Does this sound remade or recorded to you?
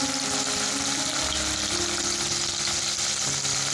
recorded